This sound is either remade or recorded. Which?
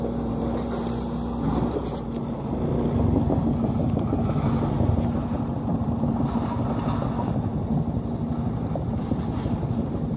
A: recorded